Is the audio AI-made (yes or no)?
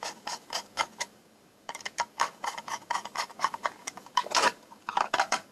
yes